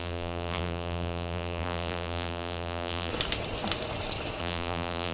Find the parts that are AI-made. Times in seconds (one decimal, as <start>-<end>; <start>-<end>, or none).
0.0-3.1; 4.4-5.1